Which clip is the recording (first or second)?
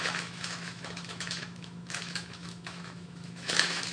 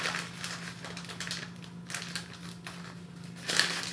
second